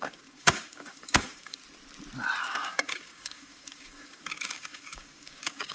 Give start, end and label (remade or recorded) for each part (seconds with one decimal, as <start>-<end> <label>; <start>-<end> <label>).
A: 0.0-1.6 remade; 1.6-2.4 recorded; 2.4-5.7 remade